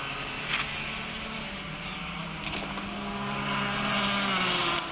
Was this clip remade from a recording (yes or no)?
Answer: no